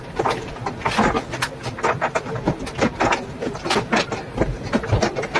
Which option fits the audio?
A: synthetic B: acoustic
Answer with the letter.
B